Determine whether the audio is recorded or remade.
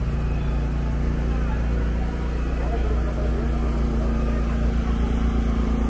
recorded